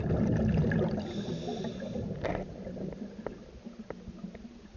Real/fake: real